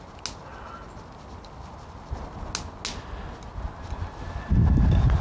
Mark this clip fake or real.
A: real